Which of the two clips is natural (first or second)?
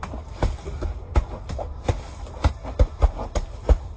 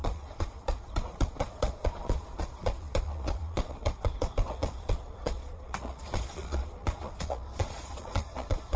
first